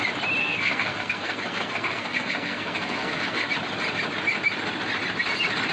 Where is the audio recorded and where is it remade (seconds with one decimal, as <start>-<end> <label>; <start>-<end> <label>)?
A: 0.0-0.4 recorded; 0.4-3.5 remade; 3.5-5.7 recorded